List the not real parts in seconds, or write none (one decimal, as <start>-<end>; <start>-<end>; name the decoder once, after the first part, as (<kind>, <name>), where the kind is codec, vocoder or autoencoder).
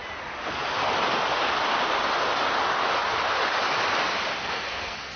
4.4-5.2 (codec, SNAC)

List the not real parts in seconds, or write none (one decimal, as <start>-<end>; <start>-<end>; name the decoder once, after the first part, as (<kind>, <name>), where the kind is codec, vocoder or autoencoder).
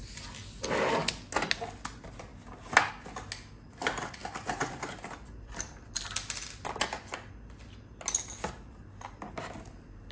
none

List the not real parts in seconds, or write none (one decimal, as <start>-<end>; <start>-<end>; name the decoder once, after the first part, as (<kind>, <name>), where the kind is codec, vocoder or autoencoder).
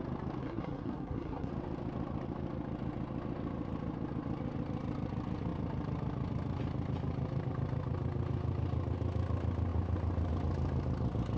0.4-1.5 (codec, SNAC)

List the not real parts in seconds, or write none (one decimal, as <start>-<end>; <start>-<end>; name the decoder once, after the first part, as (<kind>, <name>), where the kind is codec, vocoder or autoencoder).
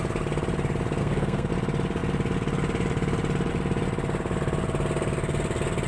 1.0-1.5 (codec, SNAC)